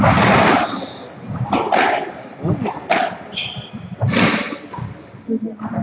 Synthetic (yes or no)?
no